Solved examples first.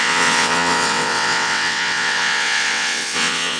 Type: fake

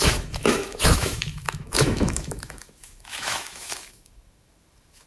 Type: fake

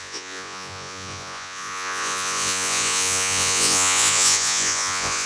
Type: fake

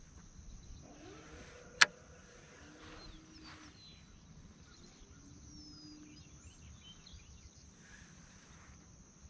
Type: real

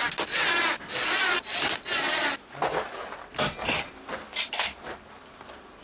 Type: real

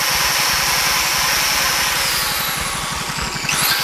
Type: real